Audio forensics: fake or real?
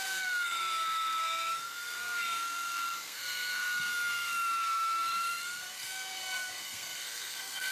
fake